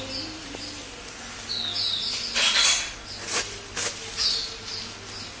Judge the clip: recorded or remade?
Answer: recorded